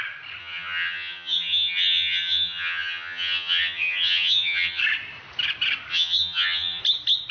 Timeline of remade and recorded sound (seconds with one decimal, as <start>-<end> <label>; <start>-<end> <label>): 0.0-0.4 recorded; 0.4-4.8 remade; 4.8-5.9 recorded; 5.9-6.8 remade; 6.8-7.3 recorded